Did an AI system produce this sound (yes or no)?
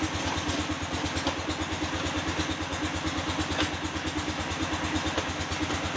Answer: no